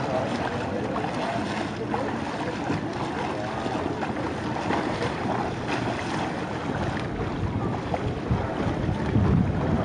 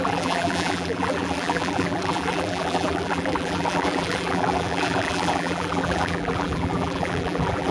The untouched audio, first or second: first